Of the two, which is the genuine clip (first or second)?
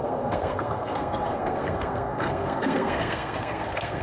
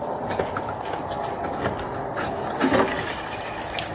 second